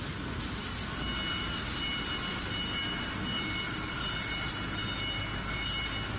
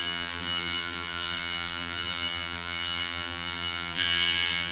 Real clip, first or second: first